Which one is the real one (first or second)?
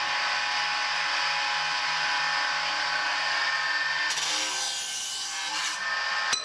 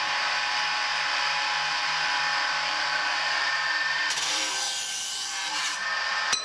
first